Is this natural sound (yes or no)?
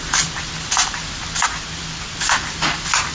yes